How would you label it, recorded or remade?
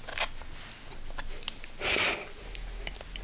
recorded